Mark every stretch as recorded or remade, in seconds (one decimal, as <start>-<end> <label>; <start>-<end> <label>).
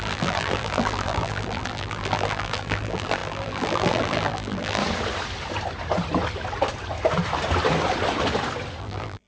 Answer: 0.0-4.8 remade; 4.8-8.8 recorded; 8.8-9.3 remade